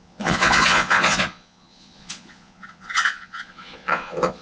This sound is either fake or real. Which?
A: fake